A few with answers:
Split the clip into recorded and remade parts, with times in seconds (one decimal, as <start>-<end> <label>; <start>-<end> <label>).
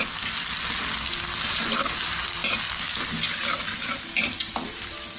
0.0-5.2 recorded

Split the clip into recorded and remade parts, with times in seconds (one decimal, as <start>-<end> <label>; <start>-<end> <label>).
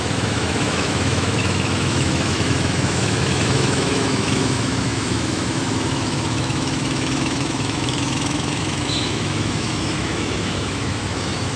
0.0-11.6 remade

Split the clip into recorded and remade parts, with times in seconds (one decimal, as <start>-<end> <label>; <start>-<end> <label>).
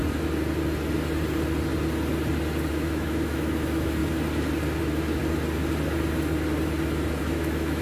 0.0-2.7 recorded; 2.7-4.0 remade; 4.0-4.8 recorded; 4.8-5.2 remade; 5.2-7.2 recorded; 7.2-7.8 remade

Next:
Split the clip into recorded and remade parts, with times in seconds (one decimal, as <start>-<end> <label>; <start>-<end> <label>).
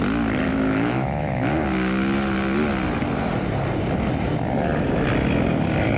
0.0-0.5 recorded; 0.5-1.5 remade; 1.5-6.0 recorded